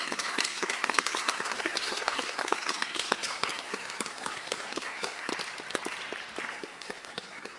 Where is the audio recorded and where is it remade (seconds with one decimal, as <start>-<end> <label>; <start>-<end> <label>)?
0.0-5.3 remade; 5.3-6.5 recorded; 6.5-7.6 remade